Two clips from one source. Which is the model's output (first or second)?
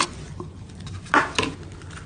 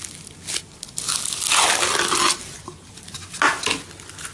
first